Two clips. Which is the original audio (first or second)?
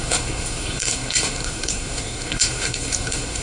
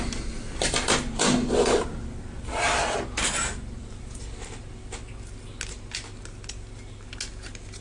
second